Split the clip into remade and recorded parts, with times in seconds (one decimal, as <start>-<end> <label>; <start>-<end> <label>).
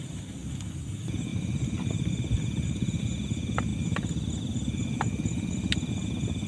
0.0-6.5 recorded